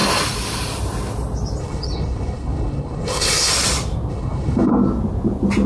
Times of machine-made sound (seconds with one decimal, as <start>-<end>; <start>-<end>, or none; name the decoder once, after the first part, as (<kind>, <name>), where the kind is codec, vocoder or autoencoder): 1.6-3.5 (codec, HILCodec); 4.1-4.7